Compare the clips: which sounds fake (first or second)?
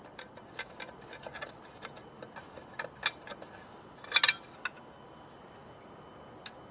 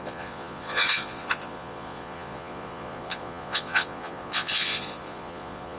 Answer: second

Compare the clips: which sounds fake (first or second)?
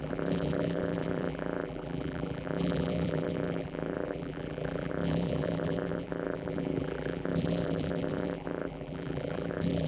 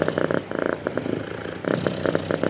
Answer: first